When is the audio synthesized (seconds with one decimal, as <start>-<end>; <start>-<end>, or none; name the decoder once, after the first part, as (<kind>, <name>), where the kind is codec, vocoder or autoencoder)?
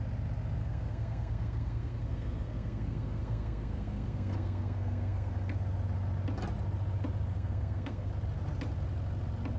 0.6-5.3 (codec, SNAC); 7.3-8.1